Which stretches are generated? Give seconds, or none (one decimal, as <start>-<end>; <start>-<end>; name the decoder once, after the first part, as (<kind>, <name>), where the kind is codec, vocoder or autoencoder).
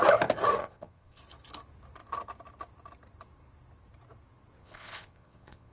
0.6-1.2 (vocoder, Vocos); 4.6-5.7